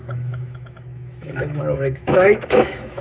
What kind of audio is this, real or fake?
fake